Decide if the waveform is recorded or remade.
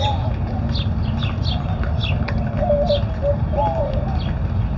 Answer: recorded